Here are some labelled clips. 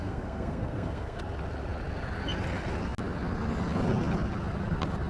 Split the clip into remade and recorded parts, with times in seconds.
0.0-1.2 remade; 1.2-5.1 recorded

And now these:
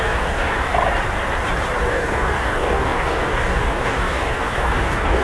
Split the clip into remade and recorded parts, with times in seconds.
0.0-0.7 remade; 0.7-1.9 recorded; 1.9-5.2 remade

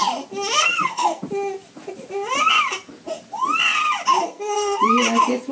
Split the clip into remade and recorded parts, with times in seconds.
0.0-0.6 recorded; 0.6-1.2 remade; 1.2-4.2 recorded; 4.2-4.8 remade; 4.8-5.5 recorded

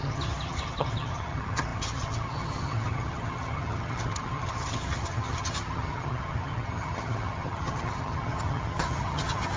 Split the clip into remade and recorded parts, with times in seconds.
0.0-9.6 remade

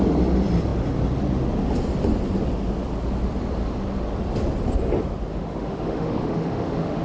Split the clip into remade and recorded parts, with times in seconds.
0.0-5.3 recorded; 5.3-7.0 remade

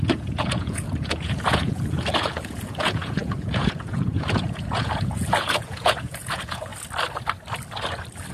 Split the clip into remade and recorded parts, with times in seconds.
0.0-6.7 remade; 6.7-8.3 recorded

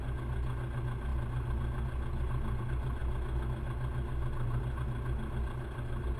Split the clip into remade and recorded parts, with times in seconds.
0.0-6.2 recorded

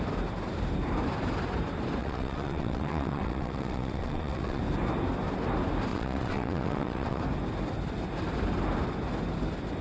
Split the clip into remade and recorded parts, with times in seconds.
0.0-2.0 recorded; 2.0-4.6 remade; 4.6-5.9 recorded; 5.9-7.2 remade; 7.2-9.8 recorded